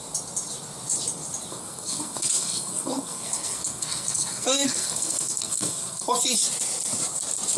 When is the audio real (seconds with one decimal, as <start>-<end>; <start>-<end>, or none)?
0.0-1.5; 6.1-7.6